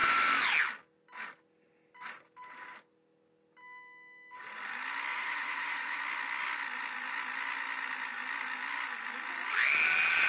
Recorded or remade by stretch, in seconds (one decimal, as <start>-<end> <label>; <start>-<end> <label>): 0.0-5.1 recorded; 5.1-6.0 remade; 6.0-10.3 recorded

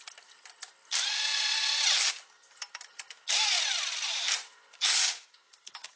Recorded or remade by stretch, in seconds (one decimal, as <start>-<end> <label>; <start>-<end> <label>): 0.0-5.0 recorded; 5.0-6.0 remade

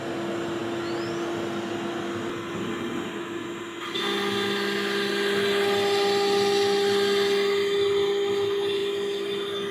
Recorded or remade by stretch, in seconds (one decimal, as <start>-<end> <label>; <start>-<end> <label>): 0.0-9.7 recorded

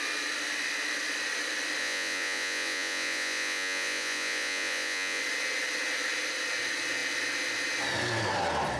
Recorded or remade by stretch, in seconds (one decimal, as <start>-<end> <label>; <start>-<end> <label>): 0.0-1.8 recorded; 1.8-5.2 remade; 5.2-8.8 recorded

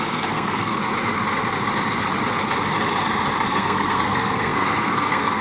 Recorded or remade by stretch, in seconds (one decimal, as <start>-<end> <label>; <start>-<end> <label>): 0.0-0.8 remade; 0.8-3.5 recorded; 3.5-5.4 remade

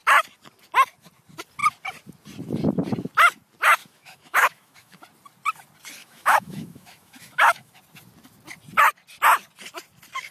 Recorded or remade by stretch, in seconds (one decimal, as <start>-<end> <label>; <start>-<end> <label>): 0.0-3.8 recorded; 3.8-5.0 remade; 5.0-6.0 recorded; 6.0-7.7 remade; 7.7-10.3 recorded